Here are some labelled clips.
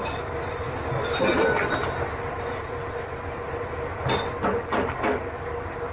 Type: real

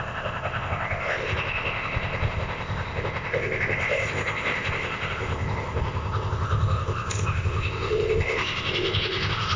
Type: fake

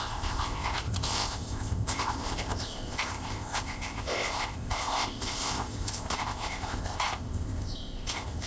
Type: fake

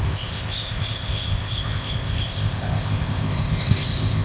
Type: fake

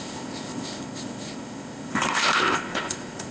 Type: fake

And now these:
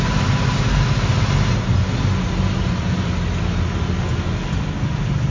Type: real